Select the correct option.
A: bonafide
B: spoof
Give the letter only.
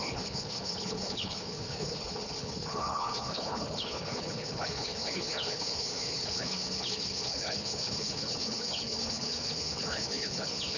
B